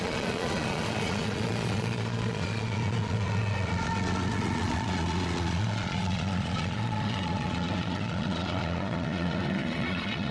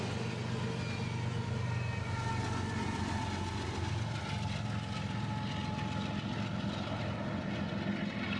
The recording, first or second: second